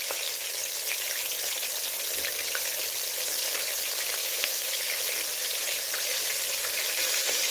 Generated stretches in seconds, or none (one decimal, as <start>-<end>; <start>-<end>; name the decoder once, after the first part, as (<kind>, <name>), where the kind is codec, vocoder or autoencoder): 4.2-4.8 (autoencoder, DAC-VAE)